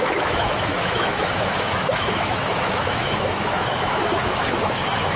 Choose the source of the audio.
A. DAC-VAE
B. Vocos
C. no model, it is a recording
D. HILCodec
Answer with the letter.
A